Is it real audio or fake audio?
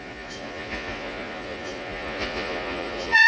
fake